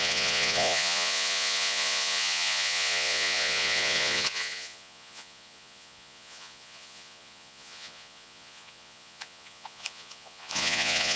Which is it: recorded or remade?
remade